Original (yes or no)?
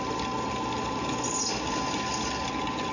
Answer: yes